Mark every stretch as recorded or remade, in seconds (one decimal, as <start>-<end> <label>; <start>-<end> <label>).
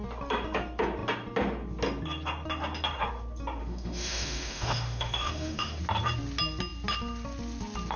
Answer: 0.0-3.6 recorded; 3.6-5.8 remade; 5.8-8.0 recorded